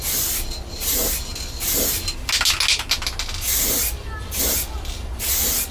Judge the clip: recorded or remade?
recorded